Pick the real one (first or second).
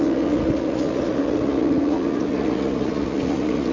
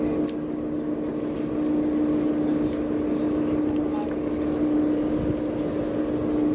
second